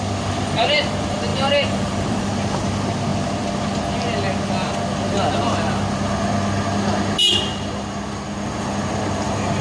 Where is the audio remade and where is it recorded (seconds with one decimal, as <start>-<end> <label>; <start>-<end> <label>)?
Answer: 0.0-1.3 recorded; 1.3-2.3 remade; 2.3-9.6 recorded